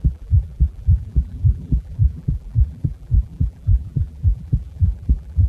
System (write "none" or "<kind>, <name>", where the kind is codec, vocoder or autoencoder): vocoder, BigVGAN v2